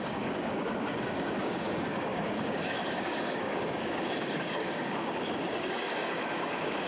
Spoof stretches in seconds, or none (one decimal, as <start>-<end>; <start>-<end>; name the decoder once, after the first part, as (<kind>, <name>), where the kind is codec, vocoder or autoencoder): 0.0-6.9 (codec, DAC)